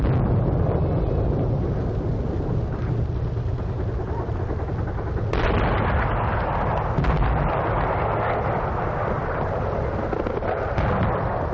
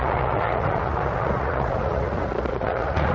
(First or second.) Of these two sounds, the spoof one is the second